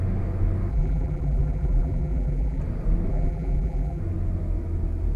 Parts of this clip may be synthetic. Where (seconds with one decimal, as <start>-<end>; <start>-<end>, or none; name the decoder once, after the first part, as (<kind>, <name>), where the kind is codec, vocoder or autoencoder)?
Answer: 0.7-2.6 (vocoder, BigVGAN v2); 3.1-4.0